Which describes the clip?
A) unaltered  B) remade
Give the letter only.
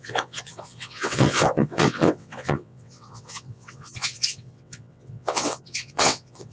B